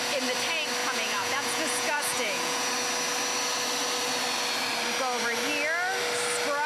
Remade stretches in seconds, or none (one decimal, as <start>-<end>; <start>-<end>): 0.8-2.7